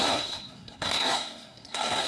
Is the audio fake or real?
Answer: fake